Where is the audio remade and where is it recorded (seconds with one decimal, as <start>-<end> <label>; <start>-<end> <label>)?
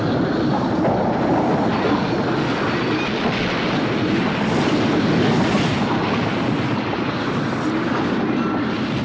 0.0-9.0 recorded